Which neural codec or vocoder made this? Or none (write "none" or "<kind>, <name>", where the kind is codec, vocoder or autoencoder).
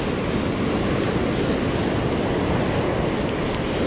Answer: none